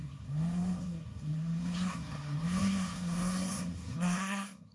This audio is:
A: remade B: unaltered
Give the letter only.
A